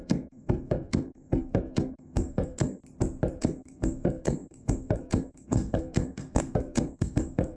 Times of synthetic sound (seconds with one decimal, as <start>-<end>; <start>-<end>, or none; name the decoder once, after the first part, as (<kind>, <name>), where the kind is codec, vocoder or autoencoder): 0.0-2.8 (codec, SNAC); 3.4-7.6